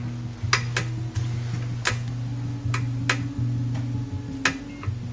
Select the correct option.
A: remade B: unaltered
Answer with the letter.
B